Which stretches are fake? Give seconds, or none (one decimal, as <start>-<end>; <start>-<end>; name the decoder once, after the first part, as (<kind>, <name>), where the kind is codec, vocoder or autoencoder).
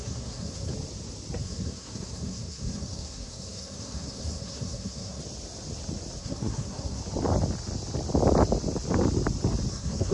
0.0-0.7 (codec, SNAC); 1.4-5.2; 6.2-7.0; 9.7-10.1